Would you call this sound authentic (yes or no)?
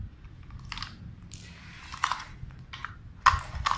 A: yes